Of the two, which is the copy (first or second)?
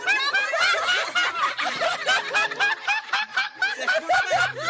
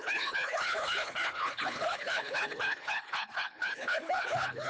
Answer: second